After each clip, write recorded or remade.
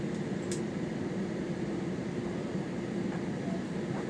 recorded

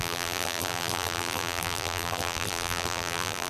remade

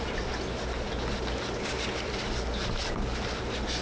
recorded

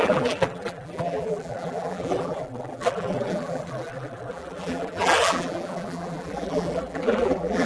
remade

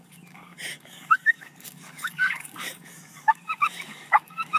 remade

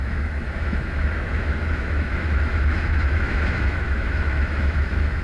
remade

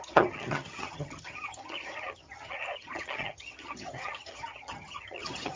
remade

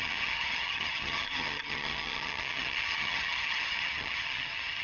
remade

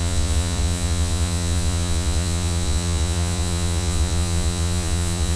remade